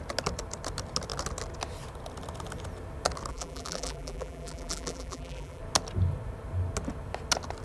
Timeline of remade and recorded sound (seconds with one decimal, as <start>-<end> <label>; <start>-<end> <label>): 0.0-3.3 recorded; 3.3-5.6 remade; 5.6-7.6 recorded